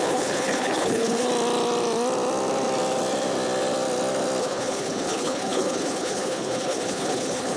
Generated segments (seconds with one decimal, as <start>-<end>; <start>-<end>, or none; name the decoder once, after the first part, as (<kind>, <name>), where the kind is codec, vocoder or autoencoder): 0.0-1.3 (codec, HILCodec); 4.4-7.6